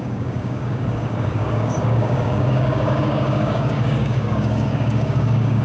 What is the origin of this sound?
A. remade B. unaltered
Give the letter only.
A